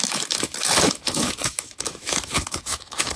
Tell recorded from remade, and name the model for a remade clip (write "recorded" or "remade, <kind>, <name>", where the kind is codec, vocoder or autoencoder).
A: remade, autoencoder, DAC-VAE